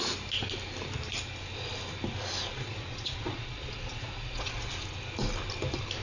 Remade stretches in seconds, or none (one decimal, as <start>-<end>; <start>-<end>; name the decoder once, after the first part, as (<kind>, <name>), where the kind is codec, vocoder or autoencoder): 2.5-4.7 (vocoder, Vocos)